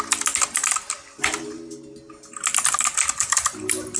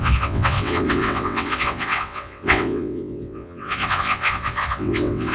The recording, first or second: first